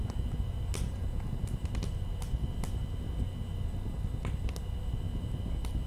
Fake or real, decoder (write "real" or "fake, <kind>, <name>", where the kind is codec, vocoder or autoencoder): real